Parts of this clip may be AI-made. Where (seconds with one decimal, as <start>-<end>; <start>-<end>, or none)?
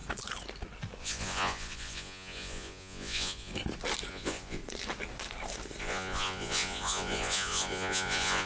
1.0-3.5; 4.1-4.6; 5.8-8.5